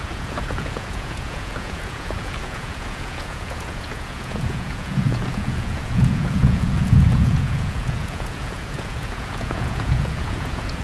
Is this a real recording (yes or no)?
no